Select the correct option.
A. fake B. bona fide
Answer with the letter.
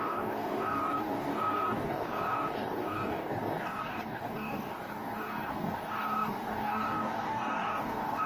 A